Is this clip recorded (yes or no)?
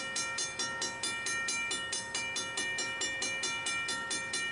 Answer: yes